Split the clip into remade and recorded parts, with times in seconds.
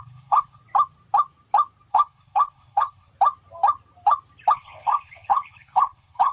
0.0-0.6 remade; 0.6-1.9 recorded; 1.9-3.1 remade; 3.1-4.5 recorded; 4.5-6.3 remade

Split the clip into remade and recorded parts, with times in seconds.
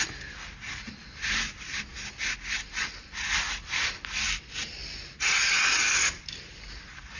0.0-7.2 recorded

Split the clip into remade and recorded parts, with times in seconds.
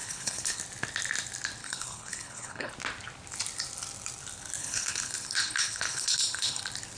0.0-0.6 remade; 0.6-1.6 recorded; 1.6-2.7 remade; 2.7-4.6 recorded; 4.6-6.6 remade; 6.6-7.0 recorded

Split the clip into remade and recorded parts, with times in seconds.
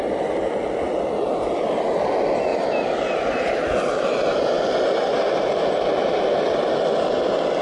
0.0-7.6 recorded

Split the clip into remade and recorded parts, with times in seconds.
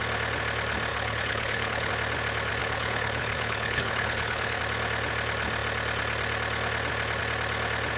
0.0-0.9 recorded; 0.9-1.9 remade; 1.9-2.6 recorded; 2.6-4.6 remade; 4.6-8.0 recorded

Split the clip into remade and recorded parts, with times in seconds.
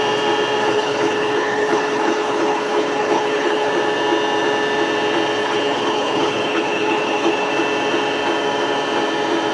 0.0-0.6 recorded; 0.6-3.7 remade; 3.7-5.4 recorded; 5.4-7.5 remade; 7.5-9.5 recorded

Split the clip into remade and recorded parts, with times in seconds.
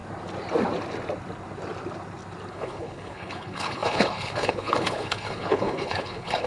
0.0-2.5 recorded; 2.5-6.5 remade